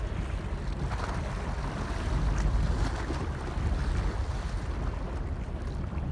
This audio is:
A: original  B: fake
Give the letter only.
A